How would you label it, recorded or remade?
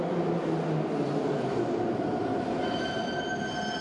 recorded